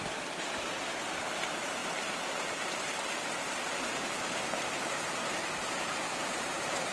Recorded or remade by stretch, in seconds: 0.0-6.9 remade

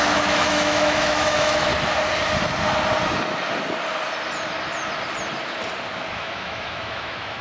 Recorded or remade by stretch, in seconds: 0.0-1.7 remade; 1.7-6.1 recorded; 6.1-7.4 remade

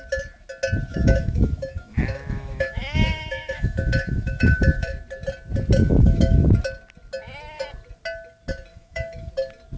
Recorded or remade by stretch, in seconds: 0.0-0.9 recorded; 0.9-5.0 remade; 5.0-5.8 recorded; 5.8-6.5 remade; 6.5-8.7 recorded; 8.7-9.3 remade; 9.3-9.8 recorded

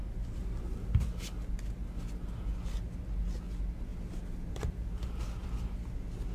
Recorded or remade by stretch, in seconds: 0.0-6.3 recorded

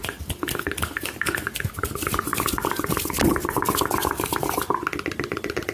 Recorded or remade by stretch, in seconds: 0.0-5.7 recorded

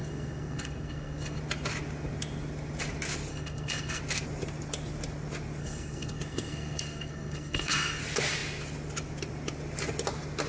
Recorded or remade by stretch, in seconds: 0.0-1.4 remade; 1.4-3.3 recorded; 3.3-4.0 remade; 4.0-5.6 recorded; 5.6-8.0 remade; 8.0-10.5 recorded

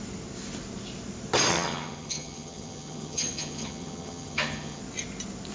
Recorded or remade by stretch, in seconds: 0.0-1.5 recorded; 1.5-4.8 remade; 4.8-5.5 recorded